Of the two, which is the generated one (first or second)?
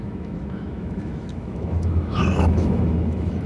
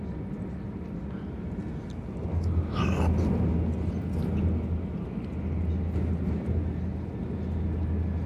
first